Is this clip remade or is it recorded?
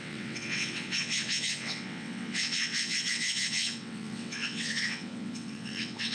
remade